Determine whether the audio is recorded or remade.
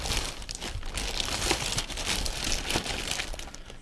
recorded